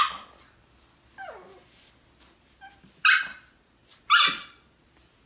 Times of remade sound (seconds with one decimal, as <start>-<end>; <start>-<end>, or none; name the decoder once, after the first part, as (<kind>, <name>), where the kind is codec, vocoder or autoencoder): none